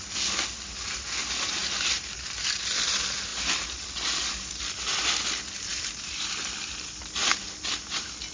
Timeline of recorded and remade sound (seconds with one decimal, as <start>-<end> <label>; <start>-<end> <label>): 0.0-3.3 recorded; 3.3-4.6 remade; 4.6-5.7 recorded; 5.7-7.4 remade; 7.4-8.3 recorded